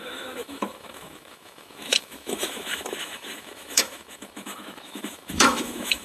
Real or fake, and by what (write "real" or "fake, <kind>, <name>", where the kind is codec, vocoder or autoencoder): fake, autoencoder, DAC-VAE